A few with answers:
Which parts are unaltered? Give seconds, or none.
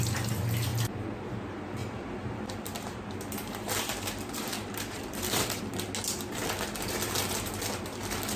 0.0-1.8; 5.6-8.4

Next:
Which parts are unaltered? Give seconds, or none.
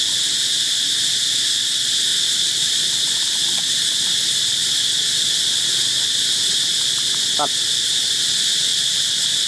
0.0-9.5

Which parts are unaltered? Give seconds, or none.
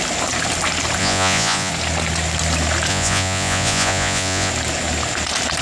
0.0-1.0; 1.7-2.9; 4.5-5.6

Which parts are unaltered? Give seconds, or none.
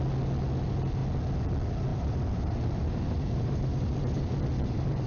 0.0-1.9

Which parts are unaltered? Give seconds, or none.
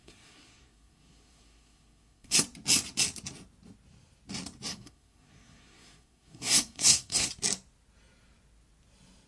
2.4-4.7; 7.3-9.3